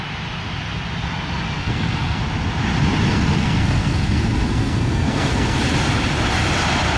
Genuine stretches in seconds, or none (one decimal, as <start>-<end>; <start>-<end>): 0.0-1.6; 2.2-3.1; 5.6-7.0